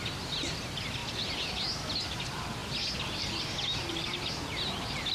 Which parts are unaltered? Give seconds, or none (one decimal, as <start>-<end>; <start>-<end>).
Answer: 0.0-5.1